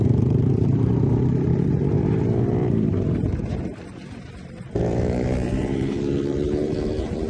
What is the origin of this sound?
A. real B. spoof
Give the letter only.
B